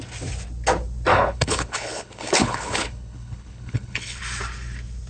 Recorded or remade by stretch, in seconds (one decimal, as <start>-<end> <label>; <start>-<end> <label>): 0.0-1.1 recorded; 1.1-4.2 remade; 4.2-5.1 recorded